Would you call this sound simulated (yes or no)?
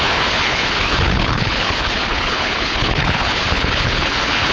yes